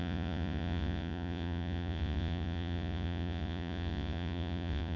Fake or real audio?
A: fake